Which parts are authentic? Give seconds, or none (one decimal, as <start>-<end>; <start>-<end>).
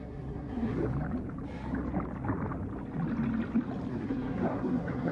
0.8-3.9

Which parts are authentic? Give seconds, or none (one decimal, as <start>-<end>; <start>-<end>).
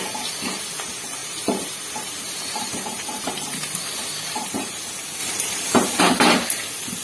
0.0-1.2; 4.8-5.2; 6.0-7.0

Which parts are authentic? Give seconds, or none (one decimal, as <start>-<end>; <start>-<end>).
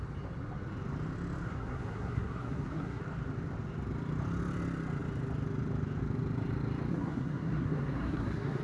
0.0-1.5; 3.0-6.9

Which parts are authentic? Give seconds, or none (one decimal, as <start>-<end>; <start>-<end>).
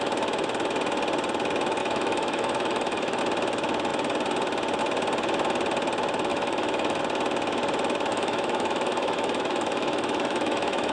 0.0-1.8; 3.2-6.3; 7.0-8.1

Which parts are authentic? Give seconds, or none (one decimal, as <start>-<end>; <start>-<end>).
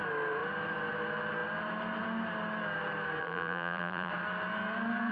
0.0-3.2; 4.1-5.1